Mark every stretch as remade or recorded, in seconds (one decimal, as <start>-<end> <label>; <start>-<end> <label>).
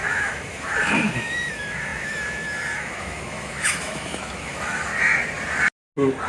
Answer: 0.0-4.9 remade; 4.9-6.3 recorded